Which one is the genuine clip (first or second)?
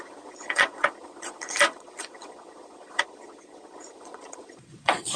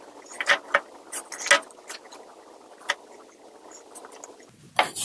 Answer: second